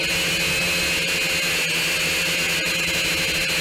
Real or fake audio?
real